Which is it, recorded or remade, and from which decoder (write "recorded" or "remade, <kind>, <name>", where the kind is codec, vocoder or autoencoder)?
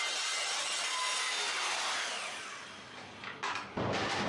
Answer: recorded